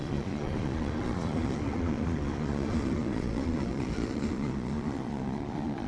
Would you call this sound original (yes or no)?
no